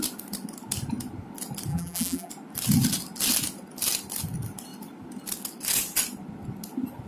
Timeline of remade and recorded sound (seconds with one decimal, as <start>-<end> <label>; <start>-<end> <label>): 0.0-1.7 recorded; 1.7-2.3 remade; 2.3-7.1 recorded